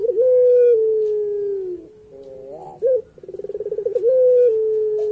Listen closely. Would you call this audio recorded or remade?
recorded